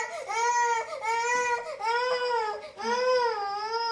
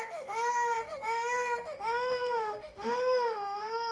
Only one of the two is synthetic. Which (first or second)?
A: second